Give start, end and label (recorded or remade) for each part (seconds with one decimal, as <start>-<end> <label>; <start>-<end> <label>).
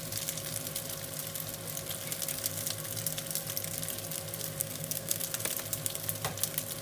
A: 0.0-4.6 recorded; 4.6-5.2 remade; 5.2-6.8 recorded